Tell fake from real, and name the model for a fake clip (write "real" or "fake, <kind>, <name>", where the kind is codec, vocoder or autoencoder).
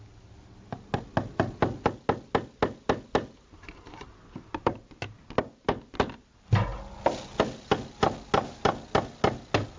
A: real